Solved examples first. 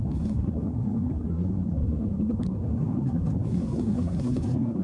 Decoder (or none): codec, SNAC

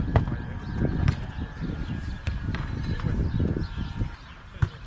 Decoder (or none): none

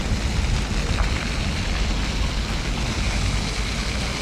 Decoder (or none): none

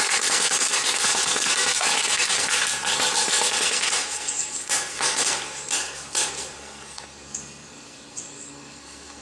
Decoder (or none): codec, SNAC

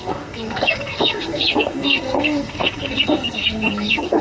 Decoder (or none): codec, SNAC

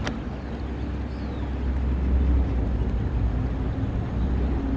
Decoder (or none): none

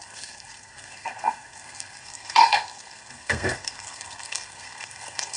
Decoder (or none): codec, SNAC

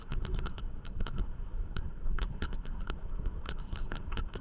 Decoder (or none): codec, SNAC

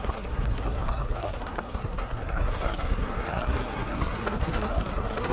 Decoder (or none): codec, SNAC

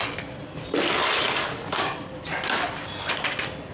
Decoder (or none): none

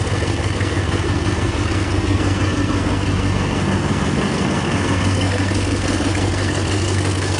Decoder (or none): codec, SNAC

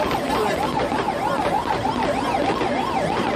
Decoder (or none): none